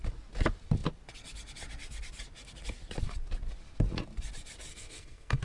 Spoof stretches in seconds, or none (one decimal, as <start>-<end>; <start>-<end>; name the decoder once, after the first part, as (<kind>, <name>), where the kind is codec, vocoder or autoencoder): 4.7-5.4 (codec, SNAC)